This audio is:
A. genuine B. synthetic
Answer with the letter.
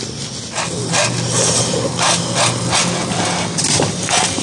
A